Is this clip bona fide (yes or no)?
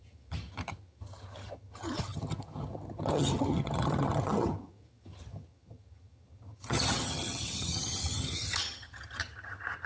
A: no